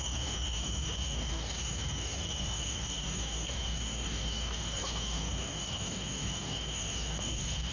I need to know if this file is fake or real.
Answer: fake